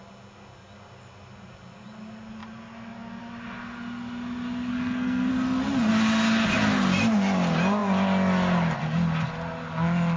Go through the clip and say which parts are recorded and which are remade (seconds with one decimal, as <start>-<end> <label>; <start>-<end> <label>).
0.0-4.7 recorded; 4.7-5.3 remade; 5.3-10.2 recorded